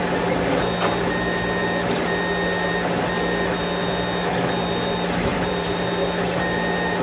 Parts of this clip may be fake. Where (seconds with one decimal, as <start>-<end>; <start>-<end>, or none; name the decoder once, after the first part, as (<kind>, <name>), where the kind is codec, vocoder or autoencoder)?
5.3-5.8 (vocoder, BigVGAN v2)